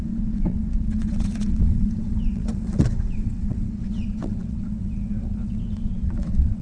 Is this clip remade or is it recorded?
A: remade